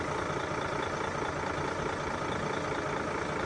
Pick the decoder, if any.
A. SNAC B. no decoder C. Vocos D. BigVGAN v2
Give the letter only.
B